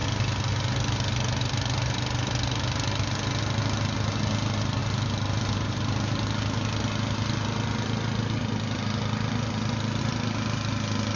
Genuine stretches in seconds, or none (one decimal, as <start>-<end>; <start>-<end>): 0.0-11.2